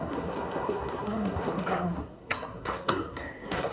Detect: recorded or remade remade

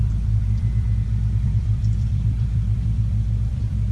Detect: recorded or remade remade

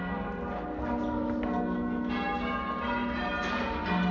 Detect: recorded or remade recorded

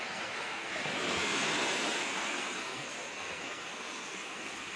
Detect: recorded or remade remade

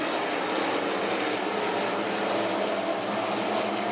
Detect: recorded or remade recorded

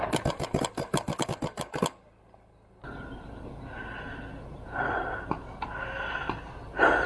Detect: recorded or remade recorded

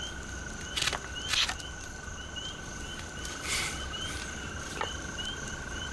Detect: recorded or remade recorded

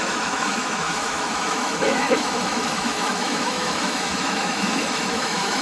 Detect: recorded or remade remade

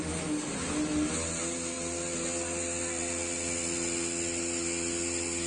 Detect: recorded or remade recorded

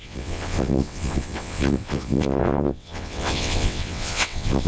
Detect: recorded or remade remade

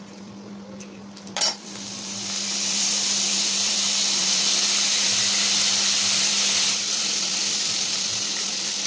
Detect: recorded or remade remade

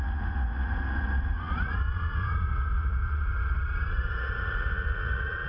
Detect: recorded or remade remade